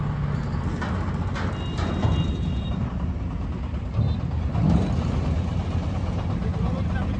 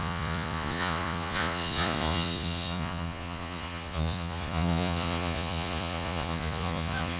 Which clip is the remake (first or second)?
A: second